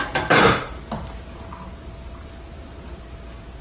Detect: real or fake real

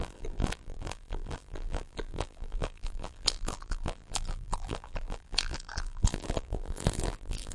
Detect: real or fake fake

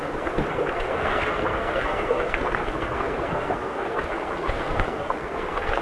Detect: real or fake fake